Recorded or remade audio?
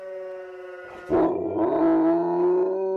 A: recorded